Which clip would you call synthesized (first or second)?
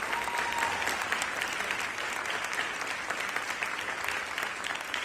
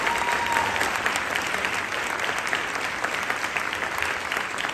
second